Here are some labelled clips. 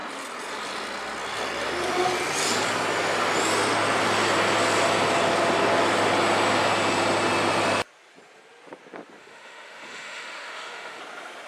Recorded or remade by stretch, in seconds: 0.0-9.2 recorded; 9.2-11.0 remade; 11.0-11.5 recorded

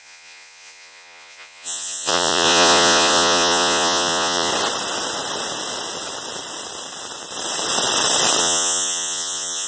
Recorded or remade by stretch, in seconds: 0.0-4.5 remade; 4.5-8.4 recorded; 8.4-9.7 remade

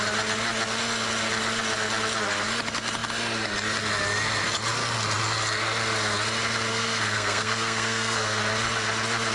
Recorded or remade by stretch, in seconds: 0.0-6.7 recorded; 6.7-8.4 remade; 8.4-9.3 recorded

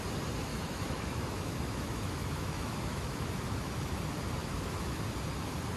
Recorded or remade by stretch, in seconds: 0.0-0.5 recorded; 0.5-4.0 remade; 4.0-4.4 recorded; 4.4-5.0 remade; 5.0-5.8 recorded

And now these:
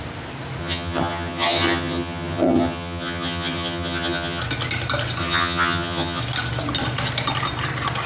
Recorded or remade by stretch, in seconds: 0.0-0.6 recorded; 0.6-4.4 remade; 4.4-5.2 recorded; 5.2-6.2 remade; 6.2-8.1 recorded